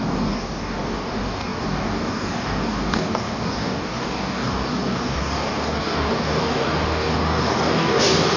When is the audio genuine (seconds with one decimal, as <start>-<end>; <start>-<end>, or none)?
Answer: none